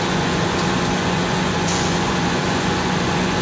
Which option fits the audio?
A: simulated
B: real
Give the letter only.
A